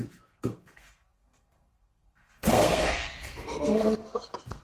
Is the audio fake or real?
fake